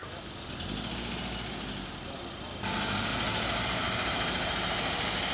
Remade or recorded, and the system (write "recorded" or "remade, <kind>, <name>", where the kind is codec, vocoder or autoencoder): recorded